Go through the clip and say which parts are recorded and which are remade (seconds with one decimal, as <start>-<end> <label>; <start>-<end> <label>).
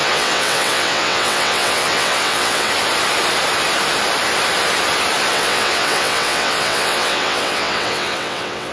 0.0-2.7 remade; 2.7-5.3 recorded; 5.3-8.7 remade